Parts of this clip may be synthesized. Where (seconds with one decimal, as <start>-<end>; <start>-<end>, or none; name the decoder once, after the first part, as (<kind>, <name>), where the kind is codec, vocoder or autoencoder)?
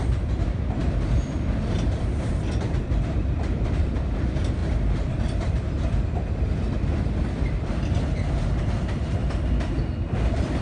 0.8-4.1 (vocoder, BigVGAN v2); 4.6-6.3; 9.2-9.7